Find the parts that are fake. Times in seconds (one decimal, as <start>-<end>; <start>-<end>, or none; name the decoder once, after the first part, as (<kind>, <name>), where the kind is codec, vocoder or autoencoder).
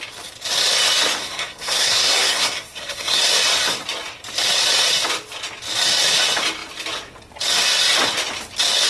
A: 1.2-3.2 (codec, SNAC)